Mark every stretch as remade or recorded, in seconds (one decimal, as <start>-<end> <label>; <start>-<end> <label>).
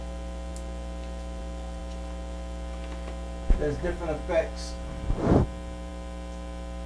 0.0-6.9 recorded